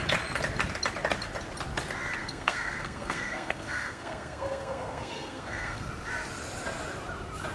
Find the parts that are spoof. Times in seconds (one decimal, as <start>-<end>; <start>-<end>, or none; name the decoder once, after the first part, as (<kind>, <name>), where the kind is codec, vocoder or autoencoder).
2.2-5.9 (codec, SNAC)